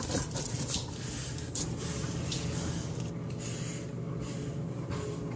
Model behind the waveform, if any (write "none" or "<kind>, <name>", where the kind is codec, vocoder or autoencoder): none